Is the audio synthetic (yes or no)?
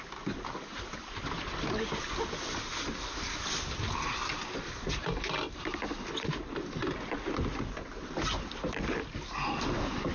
no